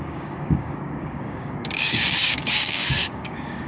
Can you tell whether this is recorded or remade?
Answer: remade